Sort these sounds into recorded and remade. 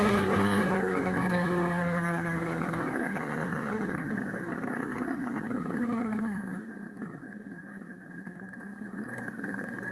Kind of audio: remade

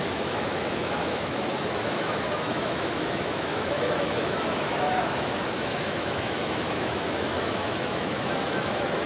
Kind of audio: remade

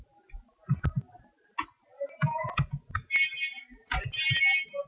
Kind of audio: recorded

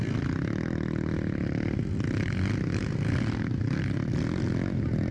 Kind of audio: recorded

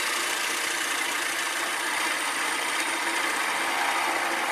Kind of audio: recorded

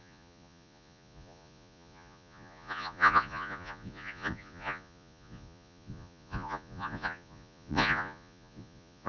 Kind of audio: remade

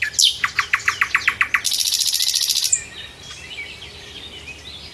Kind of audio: recorded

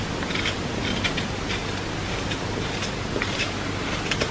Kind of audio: recorded